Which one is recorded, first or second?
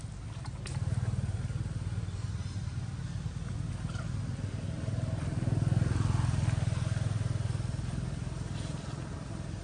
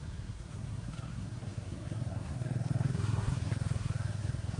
first